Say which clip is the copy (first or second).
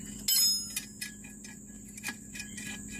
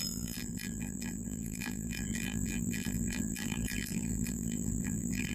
second